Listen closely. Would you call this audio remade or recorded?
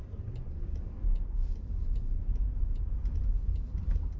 remade